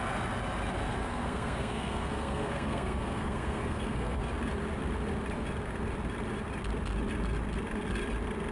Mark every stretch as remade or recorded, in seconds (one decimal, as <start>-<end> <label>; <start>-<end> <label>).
0.0-1.0 recorded; 1.0-4.2 remade; 4.2-8.5 recorded